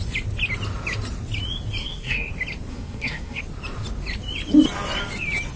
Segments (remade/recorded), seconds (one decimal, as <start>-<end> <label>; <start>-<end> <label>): 0.0-1.8 recorded; 1.8-2.3 remade; 2.3-2.7 recorded; 2.7-3.4 remade; 3.4-5.6 recorded